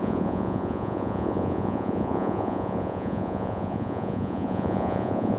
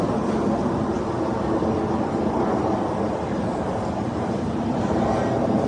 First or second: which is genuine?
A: second